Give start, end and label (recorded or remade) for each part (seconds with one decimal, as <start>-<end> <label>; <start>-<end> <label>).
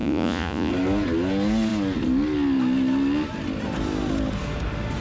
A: 0.0-0.7 remade; 0.7-5.0 recorded